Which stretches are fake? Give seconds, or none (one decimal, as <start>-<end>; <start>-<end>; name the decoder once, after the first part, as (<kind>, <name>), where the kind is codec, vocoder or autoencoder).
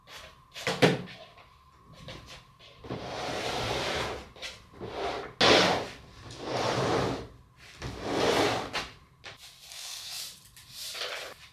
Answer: 9.7-10.2 (codec, SNAC)